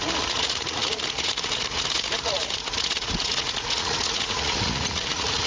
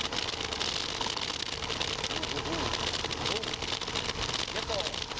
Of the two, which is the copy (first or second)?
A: first